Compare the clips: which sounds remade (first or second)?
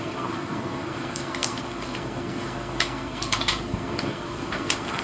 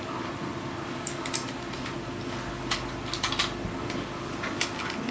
first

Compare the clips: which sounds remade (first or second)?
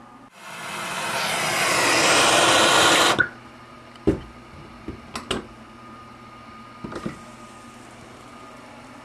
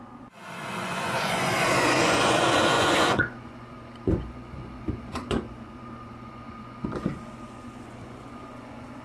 second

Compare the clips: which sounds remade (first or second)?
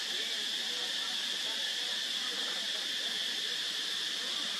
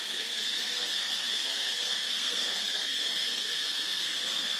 second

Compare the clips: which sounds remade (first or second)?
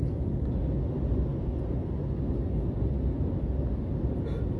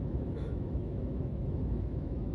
second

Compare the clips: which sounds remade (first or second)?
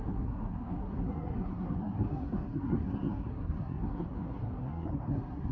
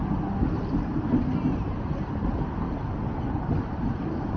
first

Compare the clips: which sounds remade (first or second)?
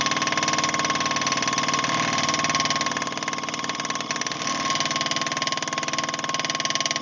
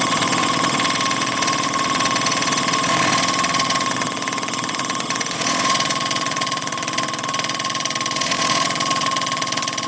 second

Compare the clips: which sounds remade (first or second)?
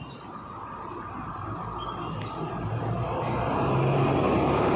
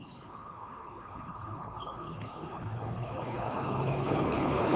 second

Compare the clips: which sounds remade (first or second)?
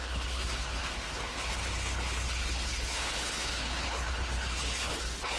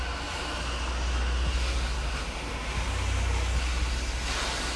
first